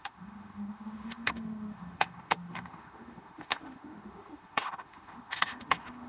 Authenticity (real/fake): fake